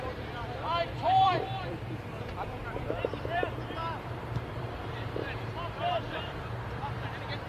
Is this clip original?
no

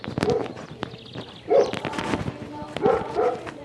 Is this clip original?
yes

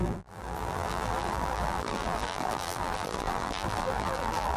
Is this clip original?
no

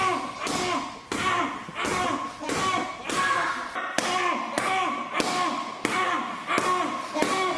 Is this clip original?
yes